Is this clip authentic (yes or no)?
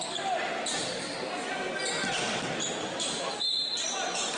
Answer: yes